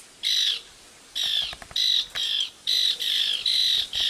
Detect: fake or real fake